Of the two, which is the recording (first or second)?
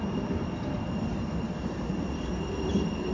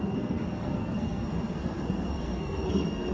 first